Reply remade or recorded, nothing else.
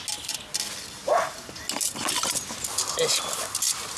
recorded